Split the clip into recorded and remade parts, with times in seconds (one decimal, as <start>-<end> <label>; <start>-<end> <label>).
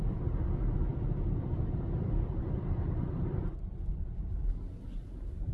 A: 0.0-0.9 recorded; 0.9-4.2 remade; 4.2-5.5 recorded